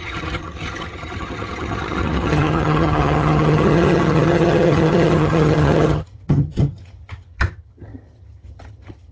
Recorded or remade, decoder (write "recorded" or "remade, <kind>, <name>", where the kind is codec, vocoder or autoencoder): remade, vocoder, HiFi-GAN